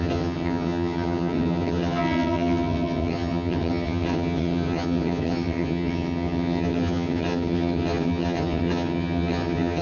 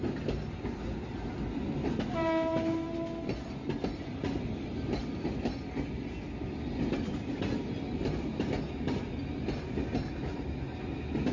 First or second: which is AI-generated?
first